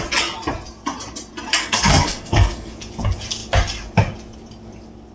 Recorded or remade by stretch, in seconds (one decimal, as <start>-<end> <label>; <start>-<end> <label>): 0.0-1.6 recorded; 1.6-2.7 remade; 2.7-5.1 recorded